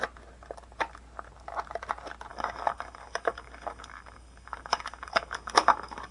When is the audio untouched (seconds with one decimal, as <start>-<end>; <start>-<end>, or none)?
0.0-2.3